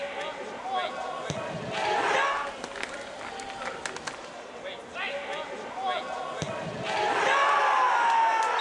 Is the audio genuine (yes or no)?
yes